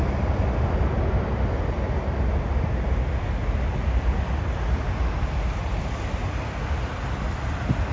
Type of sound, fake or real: real